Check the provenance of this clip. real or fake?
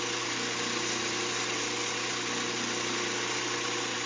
real